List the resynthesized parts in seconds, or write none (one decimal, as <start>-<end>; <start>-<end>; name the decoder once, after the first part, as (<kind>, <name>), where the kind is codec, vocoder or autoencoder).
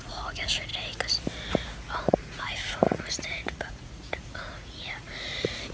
0.0-0.7 (vocoder, Vocos); 2.0-5.7